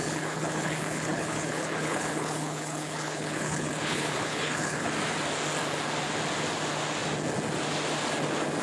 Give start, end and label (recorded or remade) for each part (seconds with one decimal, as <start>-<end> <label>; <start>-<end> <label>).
0.0-4.9 remade; 4.9-8.6 recorded